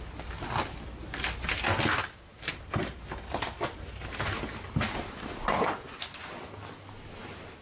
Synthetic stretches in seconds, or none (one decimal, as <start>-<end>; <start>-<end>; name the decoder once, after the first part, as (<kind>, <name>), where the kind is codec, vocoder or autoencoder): 2.3-6.4 (vocoder, BigVGAN v2)